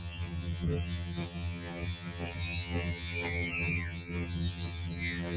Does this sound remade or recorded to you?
remade